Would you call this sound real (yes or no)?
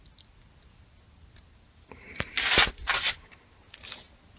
yes